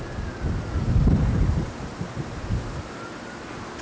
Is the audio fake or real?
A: real